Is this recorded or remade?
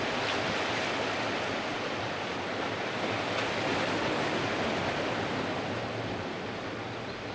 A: recorded